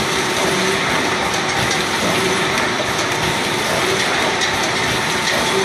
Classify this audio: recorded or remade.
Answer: remade